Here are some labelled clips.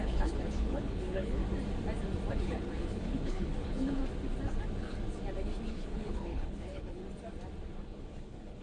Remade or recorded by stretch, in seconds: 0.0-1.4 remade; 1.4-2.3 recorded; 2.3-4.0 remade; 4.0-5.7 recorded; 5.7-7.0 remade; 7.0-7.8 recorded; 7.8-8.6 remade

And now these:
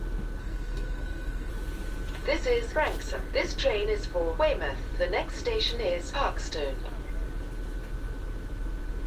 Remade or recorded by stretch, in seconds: 0.0-0.4 recorded; 0.4-1.5 remade; 1.5-9.1 recorded

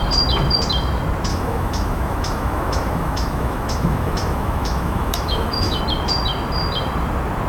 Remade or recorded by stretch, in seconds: 0.0-1.3 recorded; 1.3-5.8 remade; 5.8-7.5 recorded

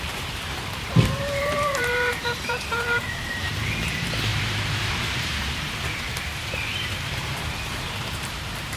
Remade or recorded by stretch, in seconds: 0.0-8.8 remade

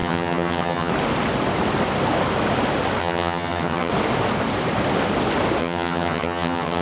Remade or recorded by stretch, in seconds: 0.0-0.9 remade; 0.9-3.0 recorded; 3.0-3.9 remade; 3.9-5.6 recorded; 5.6-6.8 remade

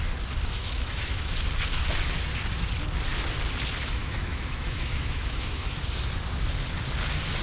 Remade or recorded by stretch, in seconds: 0.0-0.6 recorded; 0.6-1.3 remade; 1.3-4.0 recorded; 4.0-5.8 remade; 5.8-7.4 recorded

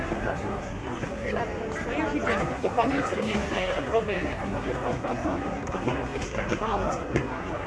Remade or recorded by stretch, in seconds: 0.0-1.4 remade; 1.4-2.4 recorded; 2.4-7.7 remade

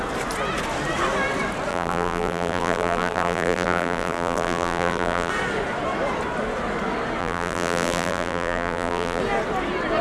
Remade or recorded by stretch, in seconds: 0.0-1.7 recorded; 1.7-5.3 remade; 5.3-7.2 recorded; 7.2-9.2 remade; 9.2-10.0 recorded